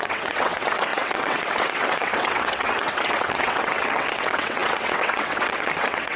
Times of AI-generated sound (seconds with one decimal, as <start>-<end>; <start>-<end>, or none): 0.0-6.2